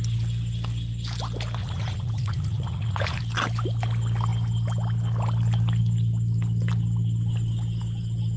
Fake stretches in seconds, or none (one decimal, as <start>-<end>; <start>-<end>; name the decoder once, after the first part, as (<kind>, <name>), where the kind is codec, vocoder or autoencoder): 1.6-3.2 (vocoder, Vocos)